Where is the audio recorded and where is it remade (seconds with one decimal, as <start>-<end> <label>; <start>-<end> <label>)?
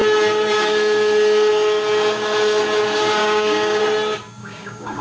0.0-3.2 recorded; 3.2-3.8 remade; 3.8-4.4 recorded; 4.4-5.0 remade